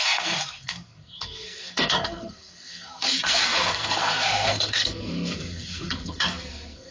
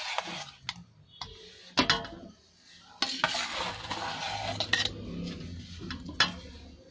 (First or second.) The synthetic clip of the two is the first